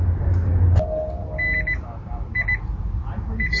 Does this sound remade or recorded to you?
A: recorded